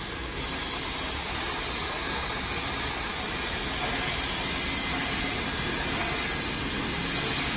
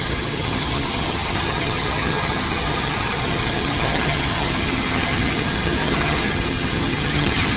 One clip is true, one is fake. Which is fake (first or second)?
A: second